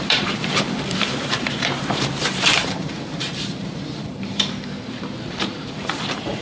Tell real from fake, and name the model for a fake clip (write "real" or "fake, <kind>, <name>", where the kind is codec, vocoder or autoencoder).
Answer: fake, vocoder, BigVGAN v2